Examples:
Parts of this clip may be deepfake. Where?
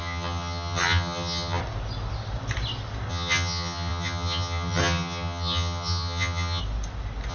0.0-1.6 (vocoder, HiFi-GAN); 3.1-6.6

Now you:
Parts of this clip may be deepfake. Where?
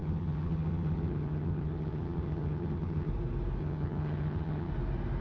0.0-3.1 (vocoder, HiFi-GAN); 3.6-4.7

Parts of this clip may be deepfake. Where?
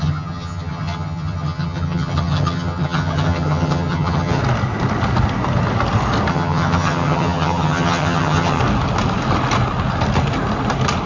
0.0-4.4 (vocoder, HiFi-GAN); 6.3-8.6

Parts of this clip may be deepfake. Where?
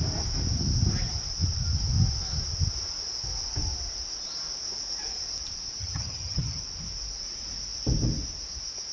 5.8-6.6 (vocoder, HiFi-GAN)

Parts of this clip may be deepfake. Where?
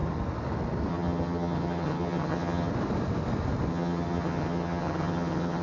0.9-2.7 (vocoder, HiFi-GAN); 3.7-5.6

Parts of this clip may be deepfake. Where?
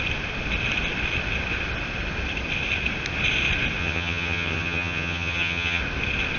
3.8-5.8 (vocoder, HiFi-GAN)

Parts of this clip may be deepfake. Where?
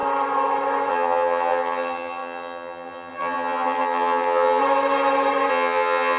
0.9-4.6 (vocoder, HiFi-GAN); 5.5-6.2